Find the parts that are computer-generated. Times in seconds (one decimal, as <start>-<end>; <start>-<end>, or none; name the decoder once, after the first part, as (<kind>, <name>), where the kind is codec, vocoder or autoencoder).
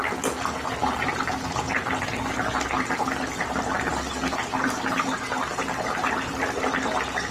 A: 3.4-3.9 (vocoder, BigVGAN v2)